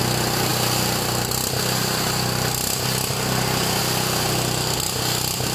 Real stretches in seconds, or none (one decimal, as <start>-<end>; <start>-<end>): 0.0-5.5